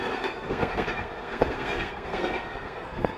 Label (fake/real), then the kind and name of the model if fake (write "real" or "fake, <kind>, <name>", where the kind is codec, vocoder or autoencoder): fake, codec, SNAC